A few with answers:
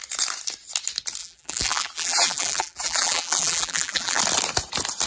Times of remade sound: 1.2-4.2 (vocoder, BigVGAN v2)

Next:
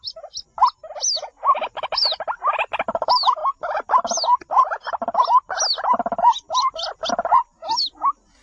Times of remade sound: none